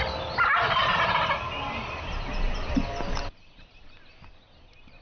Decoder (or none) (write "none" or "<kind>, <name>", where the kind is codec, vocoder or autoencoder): none